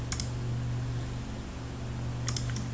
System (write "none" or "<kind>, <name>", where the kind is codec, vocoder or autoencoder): none